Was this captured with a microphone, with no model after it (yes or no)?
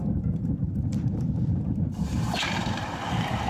no